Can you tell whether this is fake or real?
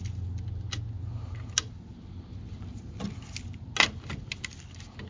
real